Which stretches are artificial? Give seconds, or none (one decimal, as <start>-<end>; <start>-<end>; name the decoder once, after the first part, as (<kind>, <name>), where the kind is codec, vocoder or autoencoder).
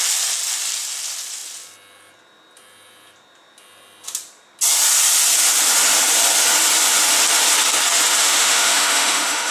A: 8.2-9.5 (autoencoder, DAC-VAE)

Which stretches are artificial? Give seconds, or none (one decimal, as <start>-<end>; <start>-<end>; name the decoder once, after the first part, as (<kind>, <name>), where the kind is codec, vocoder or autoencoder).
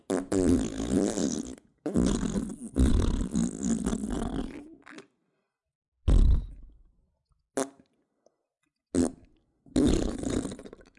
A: none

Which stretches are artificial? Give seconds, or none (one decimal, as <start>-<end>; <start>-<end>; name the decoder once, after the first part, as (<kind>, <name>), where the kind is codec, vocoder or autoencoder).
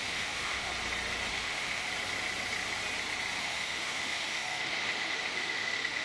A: 0.0-0.7 (autoencoder, DAC-VAE); 1.3-1.9; 3.4-6.0